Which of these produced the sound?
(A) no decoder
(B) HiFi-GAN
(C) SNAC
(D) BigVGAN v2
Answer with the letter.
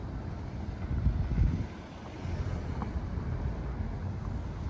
A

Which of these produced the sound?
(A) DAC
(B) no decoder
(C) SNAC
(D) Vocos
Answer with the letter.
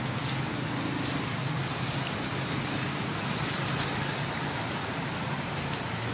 B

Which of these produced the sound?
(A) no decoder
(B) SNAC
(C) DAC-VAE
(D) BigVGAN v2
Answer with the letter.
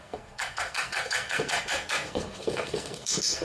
B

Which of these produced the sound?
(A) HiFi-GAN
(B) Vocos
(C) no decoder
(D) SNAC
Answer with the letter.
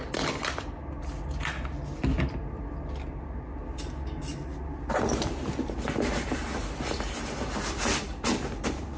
C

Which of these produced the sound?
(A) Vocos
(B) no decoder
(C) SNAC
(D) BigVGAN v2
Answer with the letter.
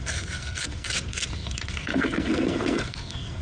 C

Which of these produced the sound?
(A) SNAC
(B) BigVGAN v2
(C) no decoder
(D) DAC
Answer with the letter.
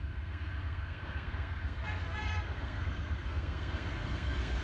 A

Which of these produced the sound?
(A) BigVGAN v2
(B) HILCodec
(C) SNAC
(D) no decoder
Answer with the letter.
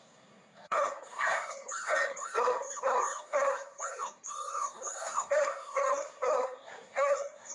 C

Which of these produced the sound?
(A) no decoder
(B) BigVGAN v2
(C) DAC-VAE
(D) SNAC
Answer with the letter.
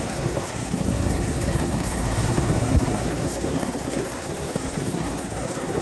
D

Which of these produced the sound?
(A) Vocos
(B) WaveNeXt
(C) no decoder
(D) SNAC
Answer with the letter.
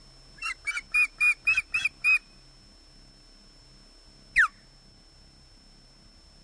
C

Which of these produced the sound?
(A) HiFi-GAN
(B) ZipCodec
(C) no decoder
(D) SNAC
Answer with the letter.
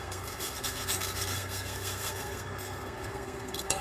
D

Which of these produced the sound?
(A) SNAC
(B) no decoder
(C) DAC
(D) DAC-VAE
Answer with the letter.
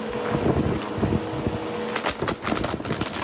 B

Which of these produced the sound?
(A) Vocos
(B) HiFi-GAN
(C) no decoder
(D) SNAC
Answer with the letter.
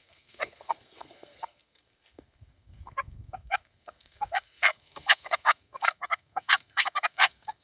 D